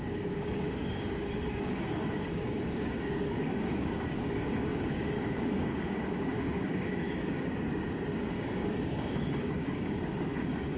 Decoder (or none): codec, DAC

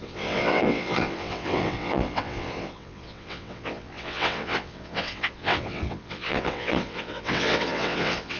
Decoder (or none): vocoder, WaveNeXt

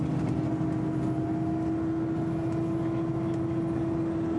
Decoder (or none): none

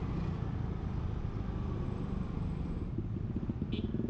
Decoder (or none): none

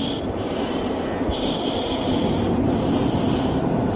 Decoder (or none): vocoder, BigVGAN v2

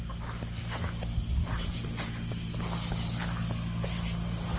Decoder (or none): none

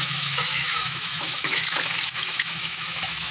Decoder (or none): autoencoder, DAC-VAE